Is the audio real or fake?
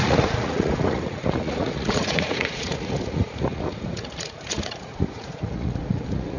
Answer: fake